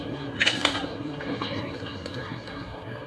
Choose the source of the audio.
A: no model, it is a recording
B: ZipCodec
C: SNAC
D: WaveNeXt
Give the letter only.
C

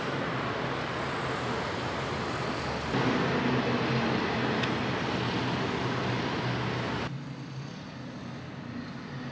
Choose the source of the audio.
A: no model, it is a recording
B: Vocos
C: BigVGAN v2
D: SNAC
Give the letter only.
A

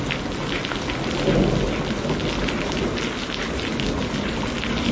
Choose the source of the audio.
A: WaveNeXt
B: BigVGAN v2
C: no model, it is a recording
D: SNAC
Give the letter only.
C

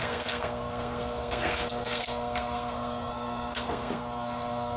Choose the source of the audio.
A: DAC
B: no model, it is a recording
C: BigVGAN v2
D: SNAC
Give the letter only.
D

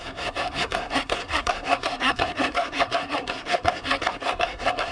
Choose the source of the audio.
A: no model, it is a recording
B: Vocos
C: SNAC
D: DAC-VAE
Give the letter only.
C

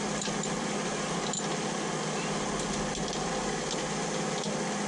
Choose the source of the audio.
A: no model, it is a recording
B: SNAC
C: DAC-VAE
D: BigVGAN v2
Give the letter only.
A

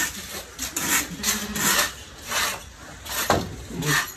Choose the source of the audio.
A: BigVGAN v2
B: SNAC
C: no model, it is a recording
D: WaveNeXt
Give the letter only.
C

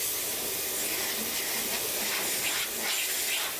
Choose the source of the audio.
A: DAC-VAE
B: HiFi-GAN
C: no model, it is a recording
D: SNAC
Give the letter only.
C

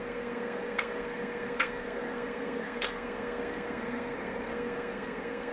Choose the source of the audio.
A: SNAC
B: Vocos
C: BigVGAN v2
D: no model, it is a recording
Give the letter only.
A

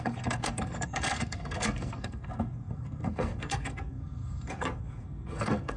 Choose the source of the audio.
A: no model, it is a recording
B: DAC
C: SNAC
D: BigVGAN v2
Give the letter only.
C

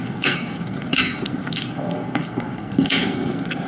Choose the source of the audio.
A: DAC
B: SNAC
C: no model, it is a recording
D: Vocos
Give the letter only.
B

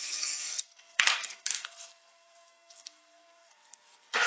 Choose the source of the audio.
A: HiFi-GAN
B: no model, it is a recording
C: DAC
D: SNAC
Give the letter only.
D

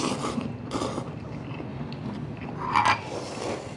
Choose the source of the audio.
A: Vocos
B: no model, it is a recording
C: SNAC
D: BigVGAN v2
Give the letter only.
B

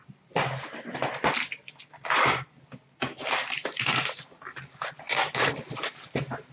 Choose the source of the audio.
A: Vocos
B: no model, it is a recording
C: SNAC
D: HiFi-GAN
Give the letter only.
B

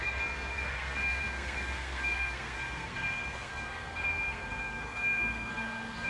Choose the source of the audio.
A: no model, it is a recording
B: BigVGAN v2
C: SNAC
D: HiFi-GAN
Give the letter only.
C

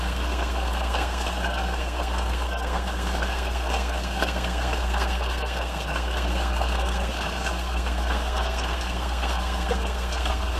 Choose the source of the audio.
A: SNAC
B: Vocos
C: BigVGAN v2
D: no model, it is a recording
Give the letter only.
A